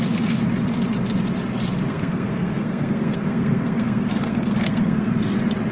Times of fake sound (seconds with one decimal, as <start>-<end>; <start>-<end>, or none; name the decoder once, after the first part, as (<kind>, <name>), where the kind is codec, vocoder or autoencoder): 1.9-5.1 (codec, SNAC)